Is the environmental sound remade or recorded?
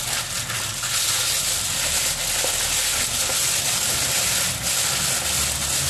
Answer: recorded